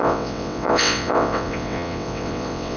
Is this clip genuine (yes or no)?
no